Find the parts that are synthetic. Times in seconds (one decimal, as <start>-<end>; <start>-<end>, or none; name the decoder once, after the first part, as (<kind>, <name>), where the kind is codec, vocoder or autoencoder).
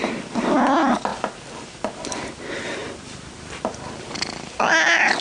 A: none